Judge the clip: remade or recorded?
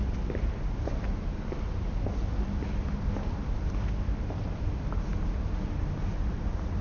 recorded